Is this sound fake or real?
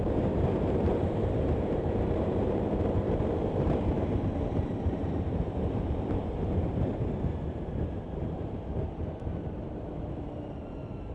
fake